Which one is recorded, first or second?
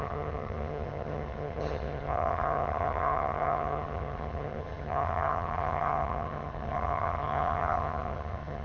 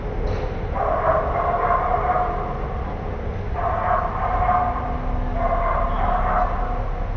second